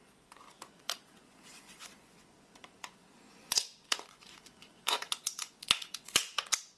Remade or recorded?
remade